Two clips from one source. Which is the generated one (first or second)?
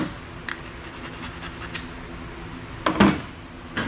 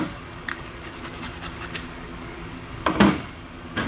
second